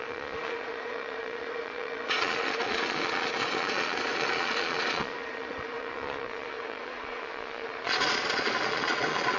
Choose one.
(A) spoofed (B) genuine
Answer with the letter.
A